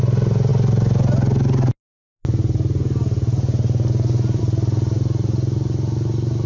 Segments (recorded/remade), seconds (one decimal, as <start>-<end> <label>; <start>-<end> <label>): 0.0-6.5 recorded